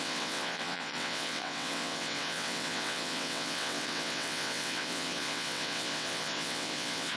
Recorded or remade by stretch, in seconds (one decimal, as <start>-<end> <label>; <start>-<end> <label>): 0.0-7.2 remade